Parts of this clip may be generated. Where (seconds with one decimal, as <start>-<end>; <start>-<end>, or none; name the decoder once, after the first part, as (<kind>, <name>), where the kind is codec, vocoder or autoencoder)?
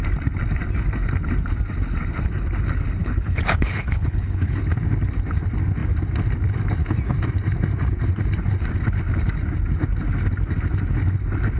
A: 3.0-4.6 (codec, HILCodec)